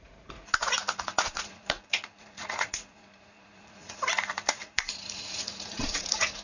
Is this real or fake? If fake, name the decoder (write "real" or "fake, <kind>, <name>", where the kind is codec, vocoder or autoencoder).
fake, vocoder, Vocos